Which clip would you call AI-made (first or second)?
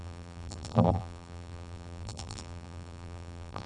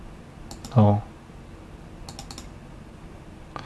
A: first